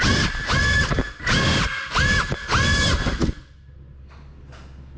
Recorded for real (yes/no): yes